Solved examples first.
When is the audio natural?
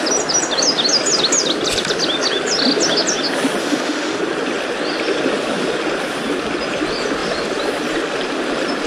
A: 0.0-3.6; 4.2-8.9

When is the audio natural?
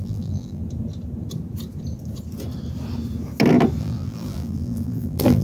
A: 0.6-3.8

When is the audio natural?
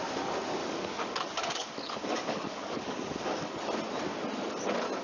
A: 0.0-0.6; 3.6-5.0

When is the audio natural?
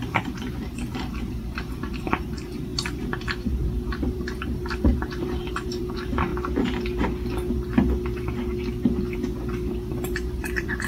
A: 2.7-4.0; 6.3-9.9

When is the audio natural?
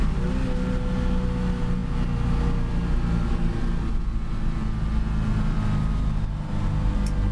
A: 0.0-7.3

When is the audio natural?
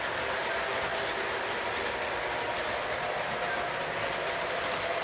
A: 0.0-5.0